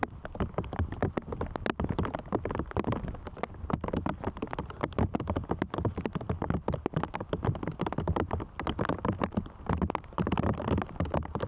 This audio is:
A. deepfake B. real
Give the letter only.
B